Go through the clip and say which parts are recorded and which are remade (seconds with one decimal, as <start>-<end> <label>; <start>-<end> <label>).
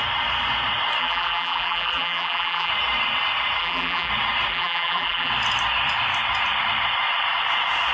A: 0.0-1.0 recorded; 1.0-2.7 remade; 2.7-3.6 recorded; 3.6-4.1 remade; 4.1-4.5 recorded; 4.5-5.3 remade; 5.3-7.9 recorded